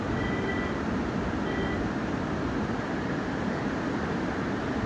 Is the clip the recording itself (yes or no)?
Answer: yes